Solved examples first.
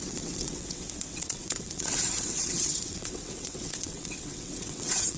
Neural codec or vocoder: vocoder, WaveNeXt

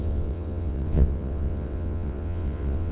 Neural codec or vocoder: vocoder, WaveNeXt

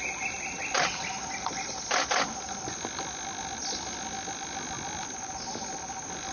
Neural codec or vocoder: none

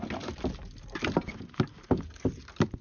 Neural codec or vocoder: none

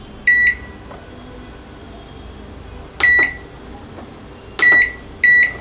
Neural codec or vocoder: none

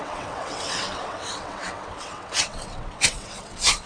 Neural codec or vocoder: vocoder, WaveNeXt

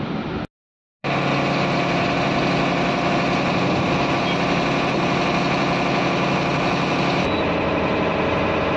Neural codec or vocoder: none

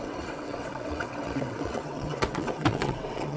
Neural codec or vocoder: vocoder, WaveNeXt